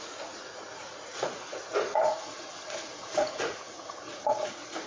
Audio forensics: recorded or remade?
remade